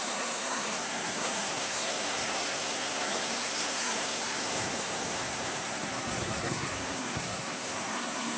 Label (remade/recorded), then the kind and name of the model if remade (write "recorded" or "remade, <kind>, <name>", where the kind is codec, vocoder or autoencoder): remade, codec, SNAC